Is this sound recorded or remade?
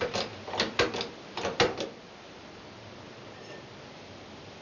recorded